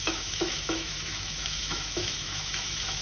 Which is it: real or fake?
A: fake